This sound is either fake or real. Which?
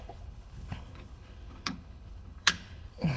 fake